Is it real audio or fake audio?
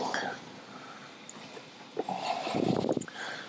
real